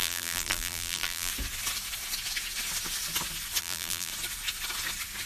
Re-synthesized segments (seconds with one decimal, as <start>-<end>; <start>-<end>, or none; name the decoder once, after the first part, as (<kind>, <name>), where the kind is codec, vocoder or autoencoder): 0.0-1.3 (vocoder, BigVGAN v2); 3.6-4.1